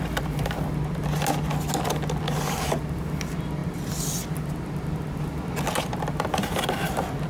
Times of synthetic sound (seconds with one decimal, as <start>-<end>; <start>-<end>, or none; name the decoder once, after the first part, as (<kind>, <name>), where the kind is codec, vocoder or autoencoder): none